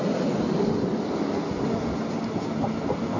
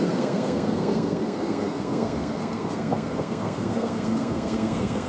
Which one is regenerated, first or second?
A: second